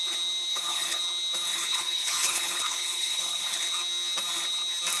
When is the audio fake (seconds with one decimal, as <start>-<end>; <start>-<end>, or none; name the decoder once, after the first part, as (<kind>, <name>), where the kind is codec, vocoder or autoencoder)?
0.5-1.0 (codec, HILCodec); 1.5-3.6